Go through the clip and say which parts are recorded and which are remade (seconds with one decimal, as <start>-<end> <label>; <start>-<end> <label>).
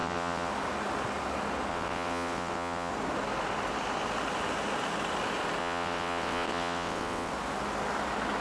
0.0-0.5 remade; 0.5-1.7 recorded; 1.7-2.9 remade; 2.9-5.6 recorded; 5.6-7.3 remade; 7.3-8.4 recorded